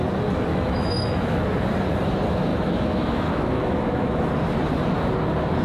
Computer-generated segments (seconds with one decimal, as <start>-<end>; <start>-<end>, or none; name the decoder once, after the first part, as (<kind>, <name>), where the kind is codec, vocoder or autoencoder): 0.5-1.4 (autoencoder, DAC-VAE); 2.5-4.2